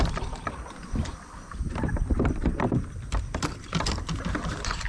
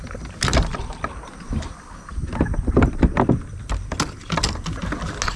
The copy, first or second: first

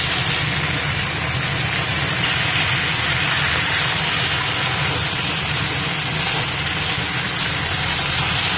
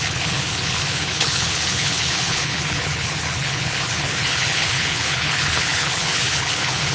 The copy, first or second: second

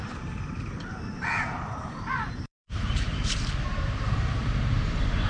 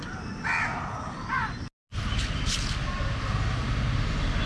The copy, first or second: first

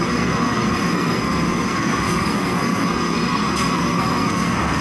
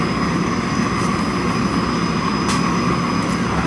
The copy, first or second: first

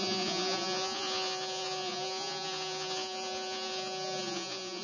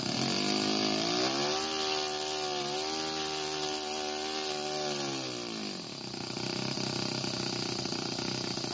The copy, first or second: first